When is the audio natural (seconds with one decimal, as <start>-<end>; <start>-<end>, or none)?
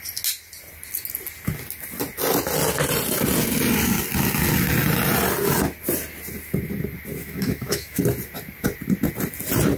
0.0-7.2; 8.0-9.8